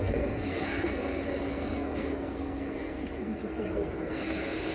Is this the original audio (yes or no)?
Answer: no